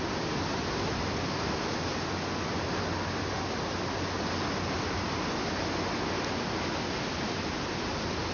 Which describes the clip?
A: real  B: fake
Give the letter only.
A